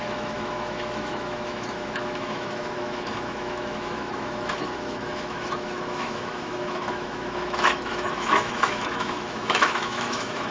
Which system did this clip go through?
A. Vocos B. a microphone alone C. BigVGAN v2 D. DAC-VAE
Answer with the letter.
D